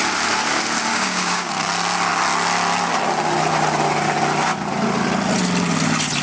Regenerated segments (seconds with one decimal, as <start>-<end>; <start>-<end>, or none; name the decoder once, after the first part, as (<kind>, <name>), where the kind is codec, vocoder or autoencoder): 0.9-1.5 (codec, DAC)